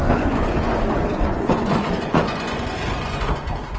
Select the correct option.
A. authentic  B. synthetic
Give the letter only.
B